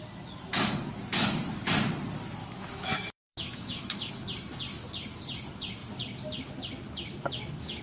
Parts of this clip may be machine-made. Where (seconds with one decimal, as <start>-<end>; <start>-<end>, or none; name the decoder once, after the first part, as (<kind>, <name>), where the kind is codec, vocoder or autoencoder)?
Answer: 2.4-4.1 (autoencoder, DAC-VAE)